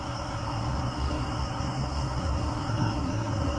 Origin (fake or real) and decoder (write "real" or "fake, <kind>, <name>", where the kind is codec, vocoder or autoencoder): fake, codec, SNAC